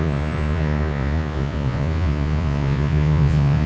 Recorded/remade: remade